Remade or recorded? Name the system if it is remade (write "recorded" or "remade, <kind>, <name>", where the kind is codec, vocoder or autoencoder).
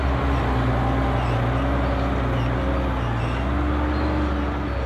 recorded